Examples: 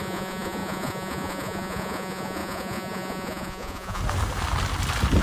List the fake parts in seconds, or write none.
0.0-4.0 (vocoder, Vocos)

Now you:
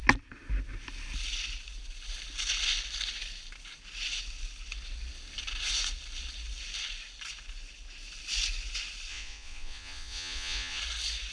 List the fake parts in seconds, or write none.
9.1-10.8 (vocoder, Vocos)

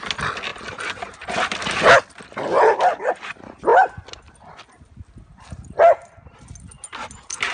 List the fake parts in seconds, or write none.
none

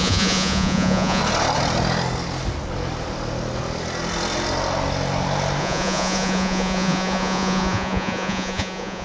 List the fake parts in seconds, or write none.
0.0-1.2 (vocoder, Vocos); 5.6-9.0